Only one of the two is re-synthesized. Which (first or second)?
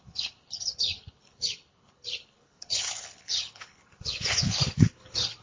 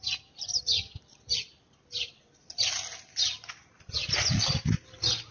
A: first